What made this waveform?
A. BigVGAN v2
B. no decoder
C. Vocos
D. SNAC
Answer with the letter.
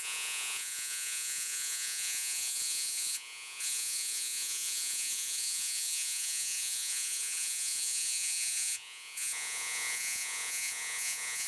C